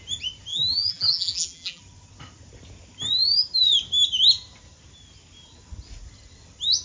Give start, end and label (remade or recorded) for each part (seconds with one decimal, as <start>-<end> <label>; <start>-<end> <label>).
0.0-0.5 recorded; 0.5-1.8 remade; 1.8-6.8 recorded